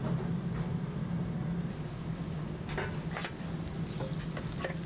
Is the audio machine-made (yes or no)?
no